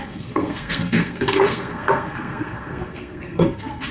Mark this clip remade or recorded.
remade